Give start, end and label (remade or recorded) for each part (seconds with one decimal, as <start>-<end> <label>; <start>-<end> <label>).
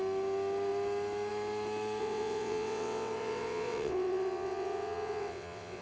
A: 0.0-2.0 recorded; 2.0-5.8 remade